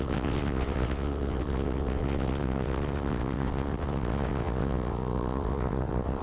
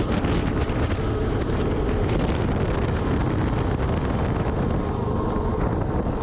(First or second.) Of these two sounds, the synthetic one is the first